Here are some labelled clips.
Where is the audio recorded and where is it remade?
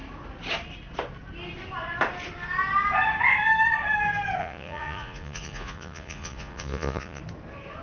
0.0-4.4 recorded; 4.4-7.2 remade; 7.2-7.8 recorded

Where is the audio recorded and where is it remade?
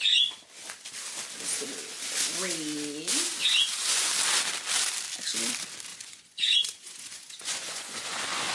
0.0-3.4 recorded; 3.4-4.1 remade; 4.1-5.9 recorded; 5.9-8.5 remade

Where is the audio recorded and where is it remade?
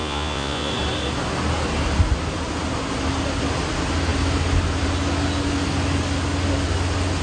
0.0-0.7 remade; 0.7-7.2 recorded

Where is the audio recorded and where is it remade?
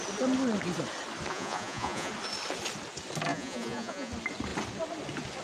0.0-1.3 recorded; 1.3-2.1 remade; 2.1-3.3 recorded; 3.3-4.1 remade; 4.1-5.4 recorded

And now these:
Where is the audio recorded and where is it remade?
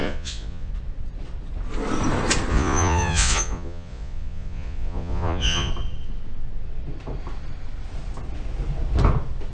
0.0-0.7 remade; 0.7-2.5 recorded; 2.5-5.7 remade; 5.7-9.5 recorded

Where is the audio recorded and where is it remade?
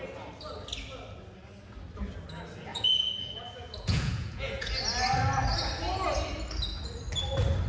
0.0-2.7 recorded; 2.7-4.7 remade; 4.7-7.7 recorded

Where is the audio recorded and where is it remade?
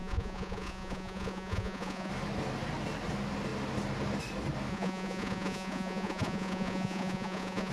0.0-2.1 remade; 2.1-4.7 recorded; 4.7-7.7 remade